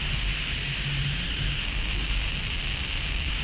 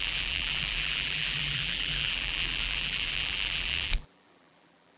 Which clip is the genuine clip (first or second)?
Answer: first